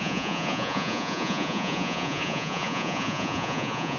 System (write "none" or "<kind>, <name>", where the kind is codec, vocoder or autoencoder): vocoder, Vocos